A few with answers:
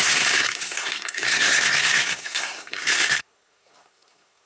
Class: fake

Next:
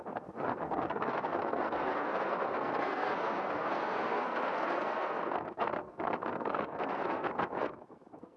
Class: fake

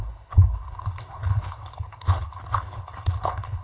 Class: fake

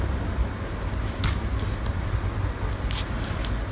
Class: real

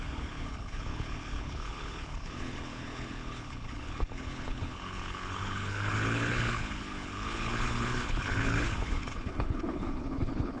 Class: fake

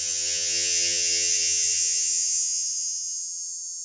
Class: fake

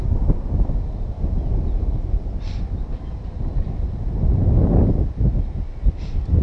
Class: real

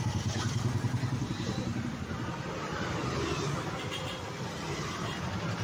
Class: real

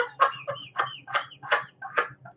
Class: real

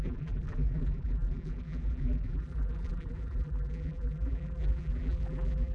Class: fake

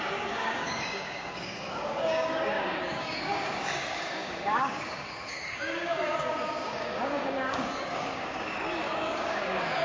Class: fake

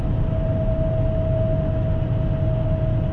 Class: real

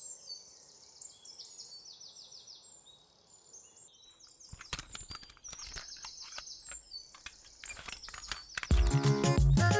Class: real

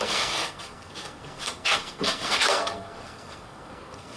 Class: fake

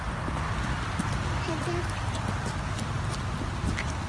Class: real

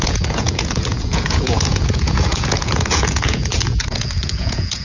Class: fake